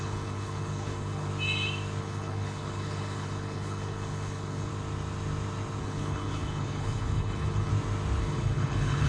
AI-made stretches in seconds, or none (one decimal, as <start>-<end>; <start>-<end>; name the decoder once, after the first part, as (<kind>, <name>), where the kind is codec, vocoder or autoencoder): 0.0-1.3 (codec, HILCodec); 2.0-4.7; 5.8-7.7; 8.2-9.1